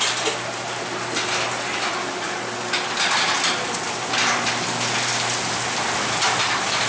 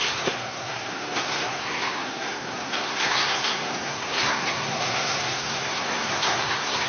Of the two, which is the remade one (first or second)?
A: second